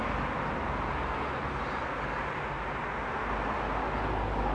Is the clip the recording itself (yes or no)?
yes